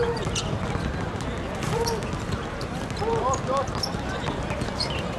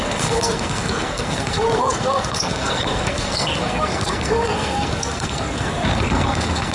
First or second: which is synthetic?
second